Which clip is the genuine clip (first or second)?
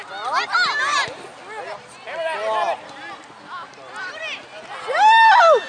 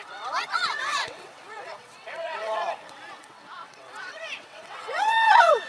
first